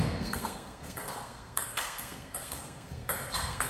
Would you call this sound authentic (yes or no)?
no